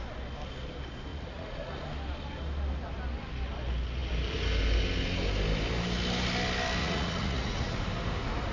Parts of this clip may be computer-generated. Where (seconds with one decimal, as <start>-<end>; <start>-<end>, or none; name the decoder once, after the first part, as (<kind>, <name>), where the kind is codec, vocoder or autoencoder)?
1.1-1.8 (vocoder, Vocos); 6.8-7.8